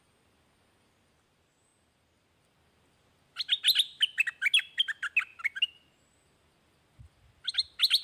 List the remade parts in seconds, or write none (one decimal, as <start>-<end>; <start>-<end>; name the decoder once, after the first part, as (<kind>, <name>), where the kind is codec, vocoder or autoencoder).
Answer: none